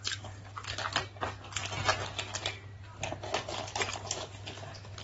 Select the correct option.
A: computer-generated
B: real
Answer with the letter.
B